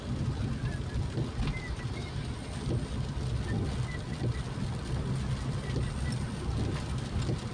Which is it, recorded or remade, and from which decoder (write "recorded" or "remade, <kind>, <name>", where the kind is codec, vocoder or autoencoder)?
recorded